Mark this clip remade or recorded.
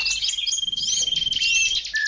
recorded